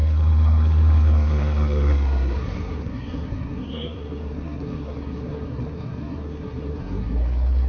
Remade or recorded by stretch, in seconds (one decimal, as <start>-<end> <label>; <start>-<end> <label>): 0.0-7.7 remade